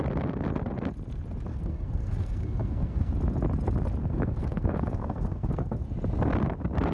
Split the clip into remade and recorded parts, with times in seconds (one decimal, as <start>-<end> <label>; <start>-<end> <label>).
0.0-1.5 recorded; 1.5-3.1 remade; 3.1-4.0 recorded; 4.0-5.8 remade; 5.8-6.9 recorded